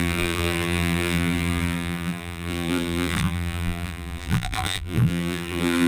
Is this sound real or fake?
fake